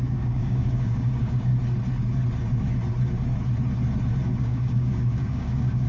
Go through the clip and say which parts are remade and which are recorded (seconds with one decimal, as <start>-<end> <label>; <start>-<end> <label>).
0.0-1.5 remade; 1.5-4.4 recorded; 4.4-5.9 remade

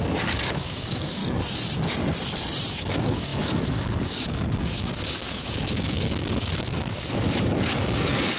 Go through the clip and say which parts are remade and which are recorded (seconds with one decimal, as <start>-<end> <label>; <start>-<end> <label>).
0.0-1.2 remade; 1.2-2.7 recorded; 2.7-8.4 remade

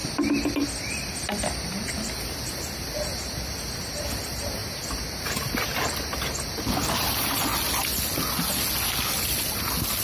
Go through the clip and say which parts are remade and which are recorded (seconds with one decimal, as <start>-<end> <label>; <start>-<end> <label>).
0.0-10.0 recorded

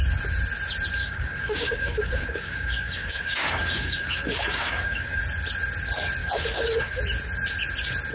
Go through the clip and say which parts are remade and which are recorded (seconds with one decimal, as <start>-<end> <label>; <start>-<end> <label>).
0.0-1.0 recorded; 1.0-5.2 remade; 5.2-6.2 recorded; 6.2-7.0 remade; 7.0-8.1 recorded

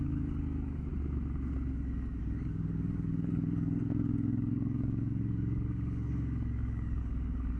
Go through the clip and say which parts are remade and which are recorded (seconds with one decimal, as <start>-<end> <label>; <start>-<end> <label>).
0.0-0.9 remade; 0.9-2.2 recorded; 2.2-7.6 remade